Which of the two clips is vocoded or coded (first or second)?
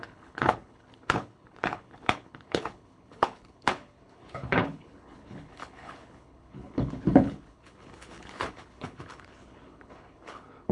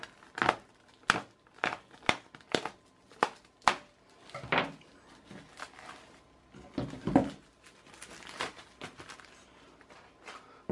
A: first